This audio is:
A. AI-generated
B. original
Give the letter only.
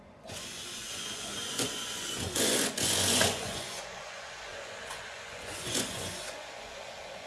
A